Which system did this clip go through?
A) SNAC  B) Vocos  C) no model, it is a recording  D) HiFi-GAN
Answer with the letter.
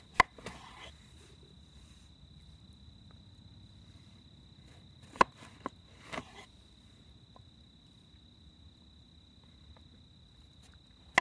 C